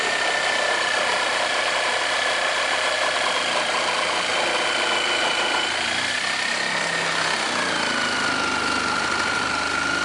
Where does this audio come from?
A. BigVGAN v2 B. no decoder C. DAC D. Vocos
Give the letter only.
B